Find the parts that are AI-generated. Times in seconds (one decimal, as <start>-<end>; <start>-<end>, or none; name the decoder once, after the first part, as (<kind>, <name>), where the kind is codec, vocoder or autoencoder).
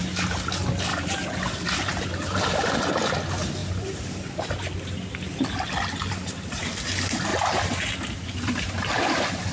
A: 0.9-2.8 (vocoder, BigVGAN v2); 3.6-4.6; 6.0-6.6; 7.3-9.0